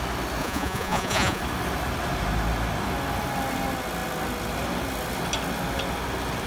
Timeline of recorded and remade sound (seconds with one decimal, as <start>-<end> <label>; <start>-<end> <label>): 0.0-0.4 recorded; 0.4-1.4 remade; 1.4-6.5 recorded